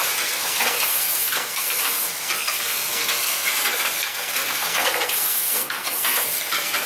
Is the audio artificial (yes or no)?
yes